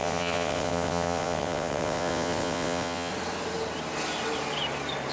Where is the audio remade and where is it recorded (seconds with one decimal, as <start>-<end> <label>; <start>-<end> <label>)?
0.0-3.1 remade; 3.1-5.1 recorded